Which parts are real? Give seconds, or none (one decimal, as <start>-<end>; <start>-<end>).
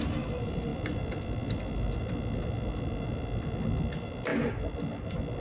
0.0-0.7; 2.0-5.4